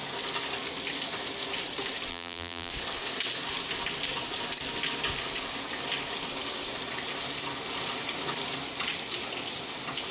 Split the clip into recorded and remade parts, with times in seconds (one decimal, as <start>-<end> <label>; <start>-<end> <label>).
0.0-2.1 recorded; 2.1-2.7 remade; 2.7-10.1 recorded